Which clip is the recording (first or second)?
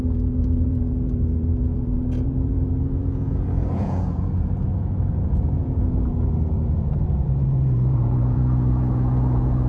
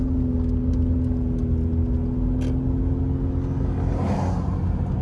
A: second